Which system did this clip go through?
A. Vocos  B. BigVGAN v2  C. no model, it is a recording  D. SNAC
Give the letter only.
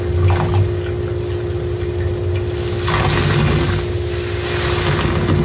C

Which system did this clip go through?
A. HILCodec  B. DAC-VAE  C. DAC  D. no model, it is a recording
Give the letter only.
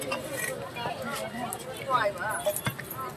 D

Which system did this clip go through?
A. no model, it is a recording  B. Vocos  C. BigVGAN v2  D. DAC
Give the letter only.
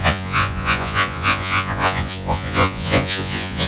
B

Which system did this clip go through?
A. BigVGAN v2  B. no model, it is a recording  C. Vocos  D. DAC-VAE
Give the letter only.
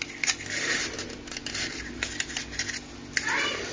B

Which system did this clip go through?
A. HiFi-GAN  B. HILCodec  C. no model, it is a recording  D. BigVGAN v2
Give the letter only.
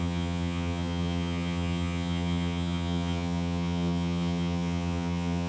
A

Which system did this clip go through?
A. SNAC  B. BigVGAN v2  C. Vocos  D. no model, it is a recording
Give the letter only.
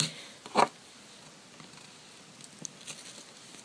D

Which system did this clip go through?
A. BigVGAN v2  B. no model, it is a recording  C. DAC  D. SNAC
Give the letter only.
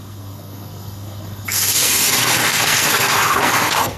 D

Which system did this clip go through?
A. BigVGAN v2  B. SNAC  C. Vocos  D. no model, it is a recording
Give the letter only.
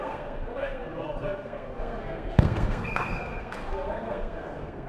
B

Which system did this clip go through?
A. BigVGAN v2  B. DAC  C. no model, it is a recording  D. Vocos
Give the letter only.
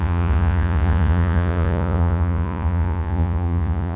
D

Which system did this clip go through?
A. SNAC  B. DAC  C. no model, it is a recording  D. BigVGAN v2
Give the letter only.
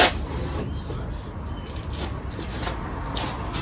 C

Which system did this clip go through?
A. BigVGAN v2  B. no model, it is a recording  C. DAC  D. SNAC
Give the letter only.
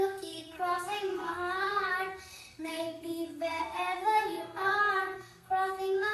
D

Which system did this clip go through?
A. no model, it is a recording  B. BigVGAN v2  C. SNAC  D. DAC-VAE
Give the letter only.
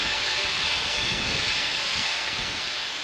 C